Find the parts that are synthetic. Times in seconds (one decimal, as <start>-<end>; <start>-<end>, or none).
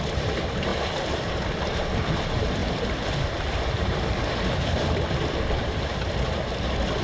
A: none